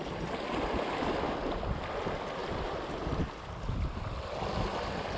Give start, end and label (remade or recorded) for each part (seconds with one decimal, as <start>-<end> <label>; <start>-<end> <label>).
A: 0.0-5.2 recorded